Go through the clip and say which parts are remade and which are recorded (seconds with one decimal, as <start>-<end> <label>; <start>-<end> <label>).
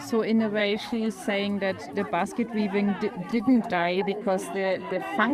0.0-0.6 recorded; 0.6-1.3 remade; 1.3-3.3 recorded; 3.3-5.3 remade